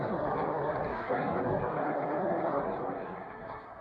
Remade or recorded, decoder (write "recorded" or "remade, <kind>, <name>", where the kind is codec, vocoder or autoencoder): remade, codec, SNAC